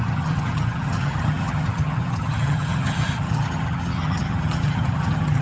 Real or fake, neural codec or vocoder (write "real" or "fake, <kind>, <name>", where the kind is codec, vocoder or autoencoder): fake, vocoder, HiFi-GAN